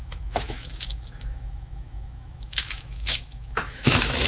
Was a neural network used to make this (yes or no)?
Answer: yes